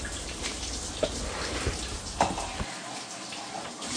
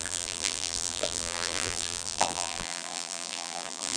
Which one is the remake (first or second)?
second